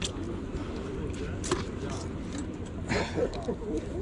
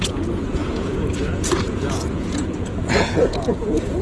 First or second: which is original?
first